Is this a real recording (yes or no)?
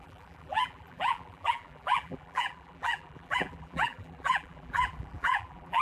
no